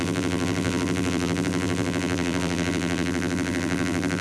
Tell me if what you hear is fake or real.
fake